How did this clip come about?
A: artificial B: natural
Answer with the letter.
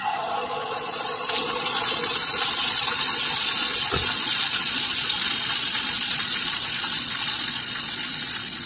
A